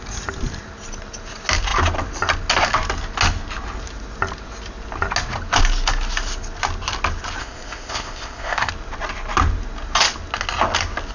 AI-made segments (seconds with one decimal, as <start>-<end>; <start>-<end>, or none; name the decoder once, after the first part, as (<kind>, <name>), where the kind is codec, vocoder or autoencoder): 7.4-8.7 (codec, ZipCodec)